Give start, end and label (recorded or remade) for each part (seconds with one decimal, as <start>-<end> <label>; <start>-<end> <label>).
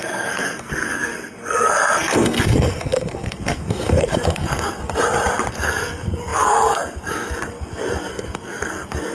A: 0.0-4.8 remade; 4.8-5.5 recorded; 5.5-9.1 remade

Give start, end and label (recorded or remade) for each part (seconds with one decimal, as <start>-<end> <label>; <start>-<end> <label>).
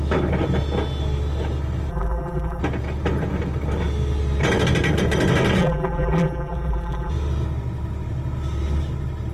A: 0.0-1.9 recorded; 1.9-2.6 remade; 2.6-5.6 recorded; 5.6-7.1 remade; 7.1-9.3 recorded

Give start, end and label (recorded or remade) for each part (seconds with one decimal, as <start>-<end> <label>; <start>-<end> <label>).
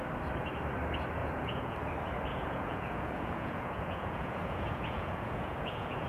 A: 0.0-1.2 recorded; 1.2-1.8 remade; 1.8-2.3 recorded; 2.3-6.1 remade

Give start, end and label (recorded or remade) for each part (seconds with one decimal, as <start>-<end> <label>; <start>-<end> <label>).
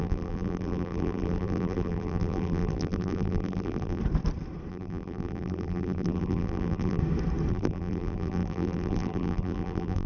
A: 0.0-4.0 remade; 4.0-4.7 recorded; 4.7-7.0 remade; 7.0-7.5 recorded; 7.5-10.1 remade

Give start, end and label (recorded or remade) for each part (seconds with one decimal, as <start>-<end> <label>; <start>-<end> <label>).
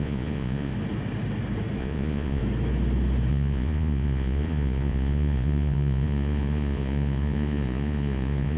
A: 0.0-0.7 remade; 0.7-1.8 recorded; 1.8-2.4 remade; 2.4-3.3 recorded; 3.3-8.6 remade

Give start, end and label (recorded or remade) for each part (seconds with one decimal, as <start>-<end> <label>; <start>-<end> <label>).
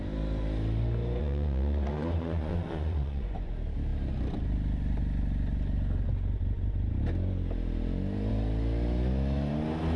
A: 0.0-1.2 recorded; 1.2-3.5 remade; 3.5-10.0 recorded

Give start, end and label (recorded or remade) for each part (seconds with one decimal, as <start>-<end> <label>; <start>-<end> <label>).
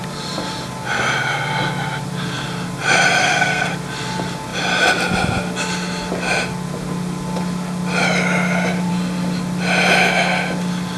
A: 0.0-3.2 recorded; 3.2-3.7 remade; 3.7-11.0 recorded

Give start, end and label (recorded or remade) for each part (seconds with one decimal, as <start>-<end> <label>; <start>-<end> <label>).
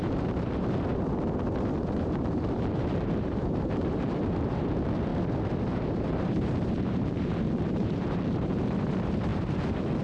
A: 0.0-0.9 remade; 0.9-1.9 recorded; 1.9-5.1 remade; 5.1-6.0 recorded; 6.0-10.0 remade